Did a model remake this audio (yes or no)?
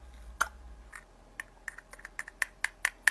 no